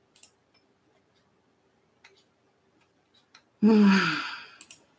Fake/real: real